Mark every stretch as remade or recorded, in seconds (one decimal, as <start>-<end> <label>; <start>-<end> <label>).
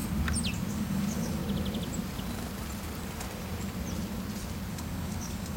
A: 0.0-0.7 recorded; 0.7-1.4 remade; 1.4-4.7 recorded; 4.7-5.6 remade